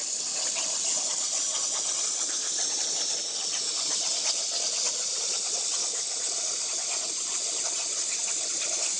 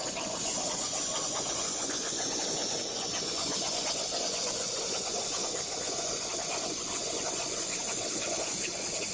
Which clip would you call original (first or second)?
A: first